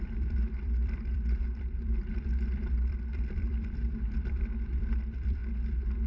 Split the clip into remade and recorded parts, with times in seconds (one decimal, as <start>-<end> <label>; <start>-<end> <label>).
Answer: 0.0-5.4 remade; 5.4-6.1 recorded